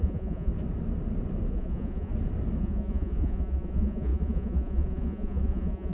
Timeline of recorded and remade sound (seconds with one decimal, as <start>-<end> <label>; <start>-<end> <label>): 0.0-0.5 remade; 0.5-1.5 recorded; 1.5-2.1 remade; 2.1-2.6 recorded; 2.6-5.9 remade

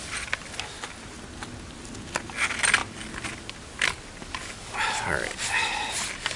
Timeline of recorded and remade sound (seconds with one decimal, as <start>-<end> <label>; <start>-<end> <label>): 0.0-6.4 recorded

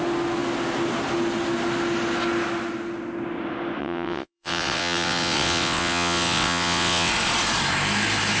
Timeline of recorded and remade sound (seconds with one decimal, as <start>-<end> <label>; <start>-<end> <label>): 0.0-3.8 recorded; 3.8-7.1 remade; 7.1-8.4 recorded

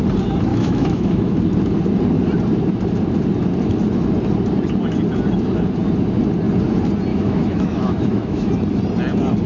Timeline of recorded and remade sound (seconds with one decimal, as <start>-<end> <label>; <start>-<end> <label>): 0.0-0.5 recorded; 0.5-1.4 remade; 1.4-7.1 recorded; 7.1-8.5 remade; 8.5-9.5 recorded

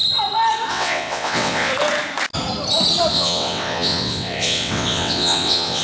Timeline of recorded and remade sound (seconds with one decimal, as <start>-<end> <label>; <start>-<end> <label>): 0.0-0.7 recorded; 0.7-1.7 remade; 1.7-3.1 recorded; 3.1-5.8 remade

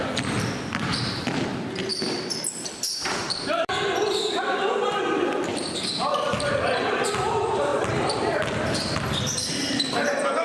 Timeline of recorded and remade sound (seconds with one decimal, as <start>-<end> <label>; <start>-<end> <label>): 0.0-1.9 remade; 1.9-2.7 recorded; 2.7-10.4 remade

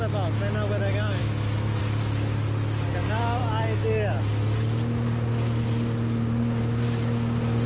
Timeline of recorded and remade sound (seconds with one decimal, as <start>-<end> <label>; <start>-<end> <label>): 0.0-1.2 recorded; 1.2-1.8 remade; 1.8-7.7 recorded